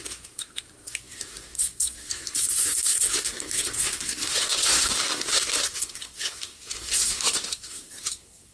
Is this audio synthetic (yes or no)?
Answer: yes